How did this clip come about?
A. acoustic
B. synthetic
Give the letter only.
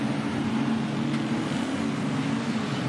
A